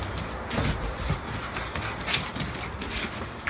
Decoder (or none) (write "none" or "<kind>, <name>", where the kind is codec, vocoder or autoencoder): none